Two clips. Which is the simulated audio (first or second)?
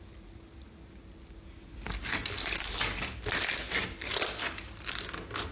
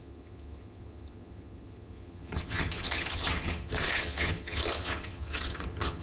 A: second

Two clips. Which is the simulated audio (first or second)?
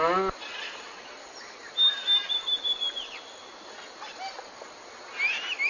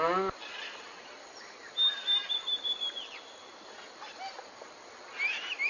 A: second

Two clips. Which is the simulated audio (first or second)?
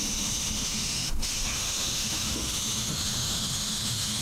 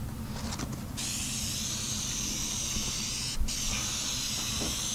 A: first